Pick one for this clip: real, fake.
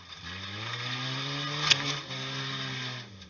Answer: real